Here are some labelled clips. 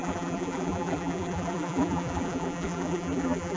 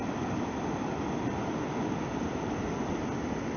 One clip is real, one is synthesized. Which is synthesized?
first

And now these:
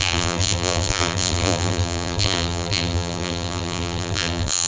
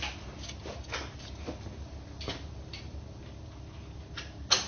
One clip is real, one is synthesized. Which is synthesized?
first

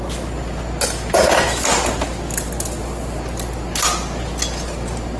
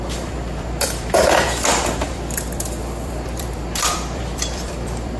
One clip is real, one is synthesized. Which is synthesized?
second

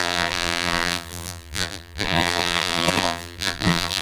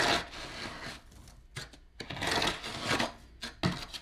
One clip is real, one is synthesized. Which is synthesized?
first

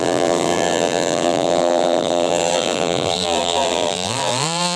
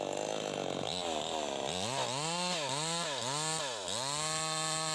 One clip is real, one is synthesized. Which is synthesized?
first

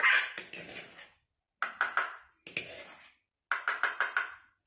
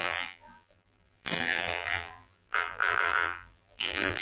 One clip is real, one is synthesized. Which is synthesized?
second